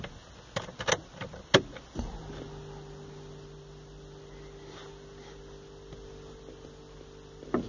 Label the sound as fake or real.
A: real